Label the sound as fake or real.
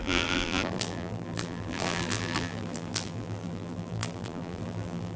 fake